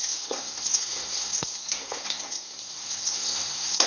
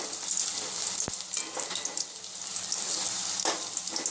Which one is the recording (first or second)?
second